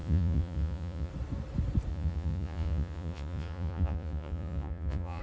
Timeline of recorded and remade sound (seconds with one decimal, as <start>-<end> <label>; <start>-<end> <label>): 0.0-1.1 remade; 1.1-1.9 recorded; 1.9-5.2 remade